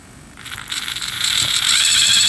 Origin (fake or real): fake